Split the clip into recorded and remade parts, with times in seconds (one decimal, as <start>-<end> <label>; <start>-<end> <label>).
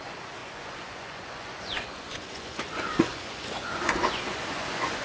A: 0.0-5.0 remade